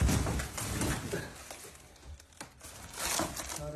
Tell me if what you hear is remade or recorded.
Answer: recorded